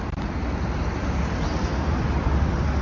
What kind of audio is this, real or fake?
real